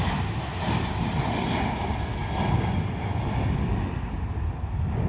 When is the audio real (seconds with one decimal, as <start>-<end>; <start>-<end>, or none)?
0.0-5.1